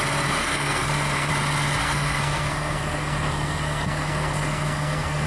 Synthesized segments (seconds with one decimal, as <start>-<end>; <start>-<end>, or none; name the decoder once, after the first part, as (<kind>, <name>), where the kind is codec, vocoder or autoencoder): 0.4-1.3 (codec, SNAC); 1.8-5.3